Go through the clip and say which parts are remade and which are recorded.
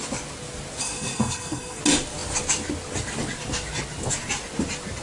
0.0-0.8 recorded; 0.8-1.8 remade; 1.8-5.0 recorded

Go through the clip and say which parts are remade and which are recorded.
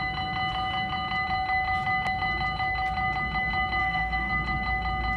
0.0-3.8 recorded; 3.8-4.3 remade; 4.3-5.2 recorded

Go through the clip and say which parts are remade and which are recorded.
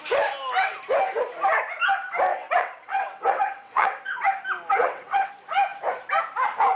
0.0-2.3 recorded; 2.3-4.2 remade; 4.2-4.8 recorded; 4.8-5.3 remade; 5.3-6.8 recorded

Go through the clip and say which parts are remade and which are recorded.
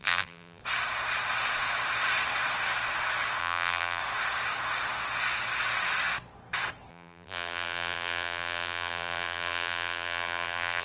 0.0-0.6 remade; 0.6-3.4 recorded; 3.4-4.0 remade; 4.0-6.9 recorded; 6.9-10.8 remade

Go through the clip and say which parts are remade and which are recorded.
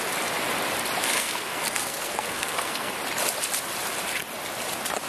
0.0-1.0 recorded; 1.0-2.9 remade; 2.9-5.1 recorded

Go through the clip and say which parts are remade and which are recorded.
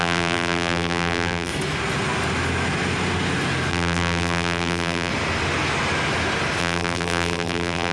0.0-1.5 remade; 1.5-3.7 recorded; 3.7-5.1 remade; 5.1-6.6 recorded; 6.6-7.9 remade